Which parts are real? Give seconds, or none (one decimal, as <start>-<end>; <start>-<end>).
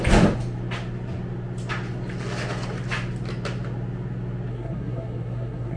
0.0-4.5